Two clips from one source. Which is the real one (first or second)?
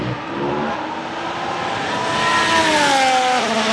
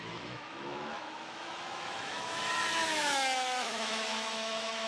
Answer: first